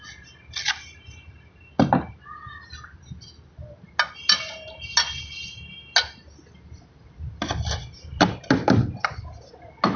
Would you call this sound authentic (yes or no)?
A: yes